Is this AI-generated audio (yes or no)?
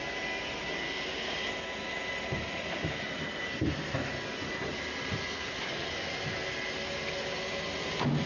no